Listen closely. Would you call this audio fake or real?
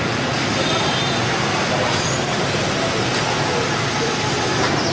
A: real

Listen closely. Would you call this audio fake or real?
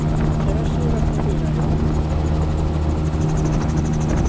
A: real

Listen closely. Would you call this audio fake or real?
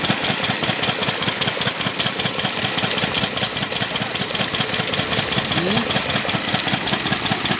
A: real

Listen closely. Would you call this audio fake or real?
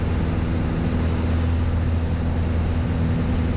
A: real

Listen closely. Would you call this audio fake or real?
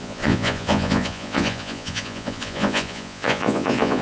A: fake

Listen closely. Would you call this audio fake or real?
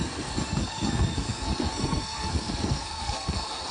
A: fake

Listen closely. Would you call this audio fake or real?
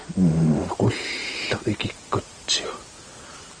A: real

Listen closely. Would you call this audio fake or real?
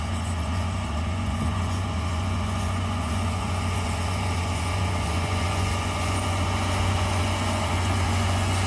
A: fake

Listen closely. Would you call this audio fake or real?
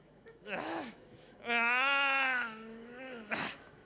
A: fake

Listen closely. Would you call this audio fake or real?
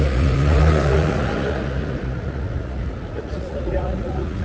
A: fake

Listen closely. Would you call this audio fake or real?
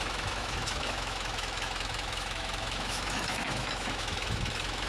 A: fake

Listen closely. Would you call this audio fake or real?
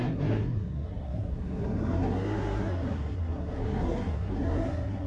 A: fake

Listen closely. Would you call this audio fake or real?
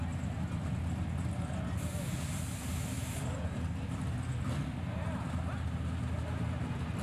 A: real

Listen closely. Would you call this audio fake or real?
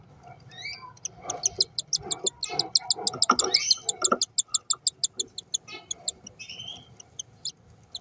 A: real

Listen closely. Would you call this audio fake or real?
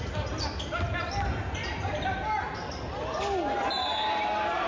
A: real